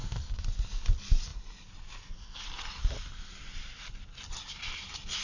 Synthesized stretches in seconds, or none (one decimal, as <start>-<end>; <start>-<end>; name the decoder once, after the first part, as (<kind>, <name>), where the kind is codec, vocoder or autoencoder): none